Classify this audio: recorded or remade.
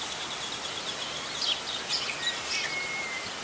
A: recorded